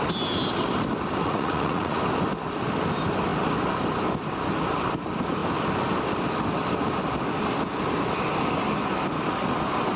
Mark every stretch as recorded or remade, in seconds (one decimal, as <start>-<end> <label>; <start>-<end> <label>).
0.0-1.2 recorded; 1.2-2.0 remade; 2.0-10.0 recorded